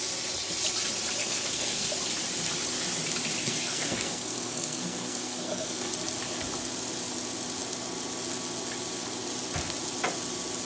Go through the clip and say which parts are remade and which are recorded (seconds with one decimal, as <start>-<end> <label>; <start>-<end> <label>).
0.0-1.2 recorded; 1.2-1.9 remade; 1.9-3.4 recorded; 3.4-5.9 remade; 5.9-10.6 recorded